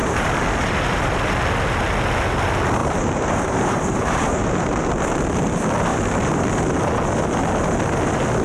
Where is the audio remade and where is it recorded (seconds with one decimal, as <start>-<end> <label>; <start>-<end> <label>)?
0.0-0.7 remade; 0.7-2.8 recorded; 2.8-4.9 remade; 4.9-5.9 recorded; 5.9-6.5 remade; 6.5-8.4 recorded

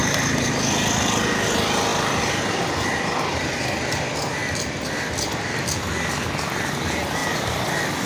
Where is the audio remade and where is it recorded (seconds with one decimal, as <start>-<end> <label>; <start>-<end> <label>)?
0.0-0.9 remade; 0.9-1.9 recorded; 1.9-4.0 remade; 4.0-4.4 recorded; 4.4-5.8 remade; 5.8-7.2 recorded; 7.2-8.1 remade